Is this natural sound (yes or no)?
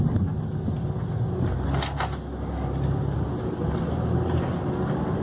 yes